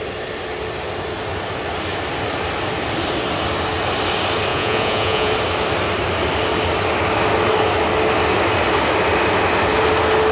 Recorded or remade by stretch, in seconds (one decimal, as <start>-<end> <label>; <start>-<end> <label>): 0.0-4.5 recorded; 4.5-5.3 remade; 5.3-10.3 recorded